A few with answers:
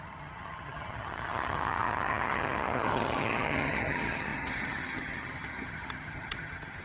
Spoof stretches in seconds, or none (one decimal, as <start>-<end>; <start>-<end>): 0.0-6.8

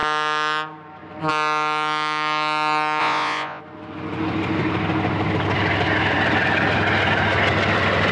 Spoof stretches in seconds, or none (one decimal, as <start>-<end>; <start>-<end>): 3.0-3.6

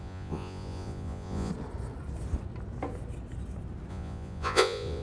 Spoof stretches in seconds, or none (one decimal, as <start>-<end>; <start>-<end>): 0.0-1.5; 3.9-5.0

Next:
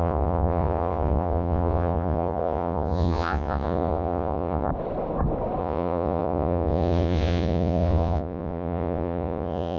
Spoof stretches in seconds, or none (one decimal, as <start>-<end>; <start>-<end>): 0.0-4.7; 5.6-9.8

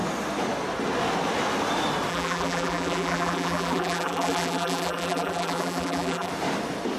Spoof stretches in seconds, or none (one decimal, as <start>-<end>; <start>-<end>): 2.1-6.3